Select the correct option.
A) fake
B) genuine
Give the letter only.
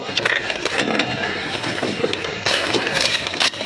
A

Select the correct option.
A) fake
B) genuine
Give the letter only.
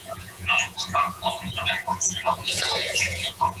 A